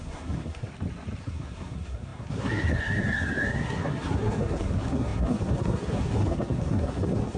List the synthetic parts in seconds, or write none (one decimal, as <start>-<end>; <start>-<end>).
0.0-0.7; 1.2-7.4